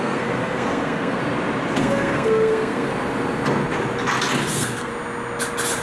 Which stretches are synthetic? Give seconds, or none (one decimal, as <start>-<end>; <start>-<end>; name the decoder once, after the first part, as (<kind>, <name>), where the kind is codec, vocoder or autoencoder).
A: 0.0-1.2 (codec, SNAC); 1.8-2.9; 4.5-4.9